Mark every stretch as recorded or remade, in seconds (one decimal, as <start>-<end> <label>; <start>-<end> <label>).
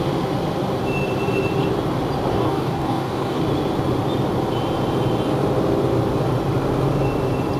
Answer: 0.0-2.3 recorded; 2.3-3.4 remade; 3.4-7.6 recorded